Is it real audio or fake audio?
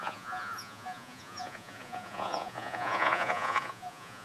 fake